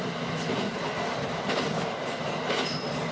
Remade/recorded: recorded